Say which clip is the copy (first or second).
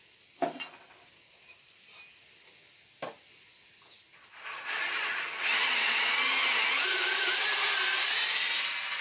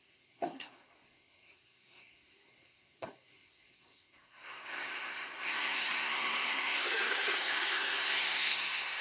second